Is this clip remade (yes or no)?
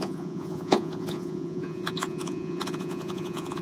yes